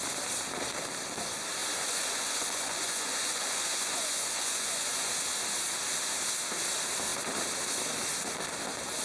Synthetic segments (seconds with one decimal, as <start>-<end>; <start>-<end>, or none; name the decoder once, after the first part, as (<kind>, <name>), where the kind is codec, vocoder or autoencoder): 1.6-5.1 (vocoder, Vocos)